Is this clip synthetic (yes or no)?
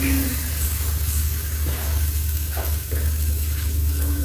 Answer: yes